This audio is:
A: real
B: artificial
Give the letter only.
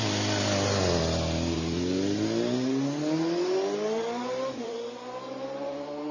A